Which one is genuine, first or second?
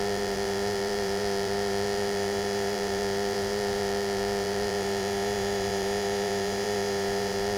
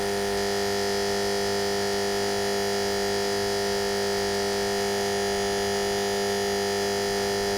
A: second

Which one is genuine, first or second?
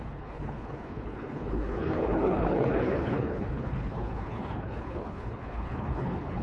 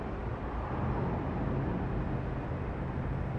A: second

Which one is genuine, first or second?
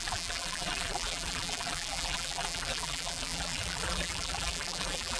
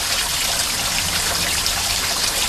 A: second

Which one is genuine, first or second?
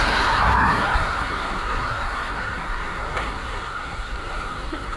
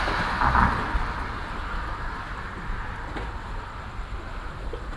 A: second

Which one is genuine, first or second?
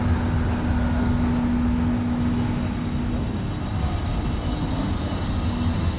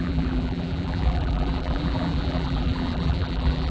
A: first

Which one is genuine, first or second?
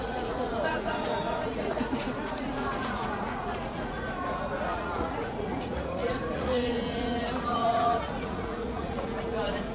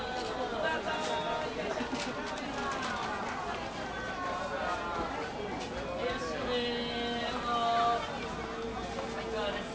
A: second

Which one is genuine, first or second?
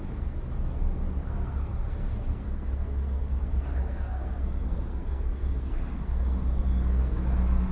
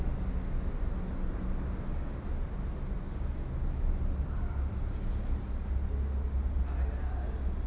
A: second